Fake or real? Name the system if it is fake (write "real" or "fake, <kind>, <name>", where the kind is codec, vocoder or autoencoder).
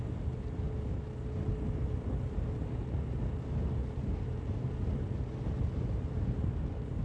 real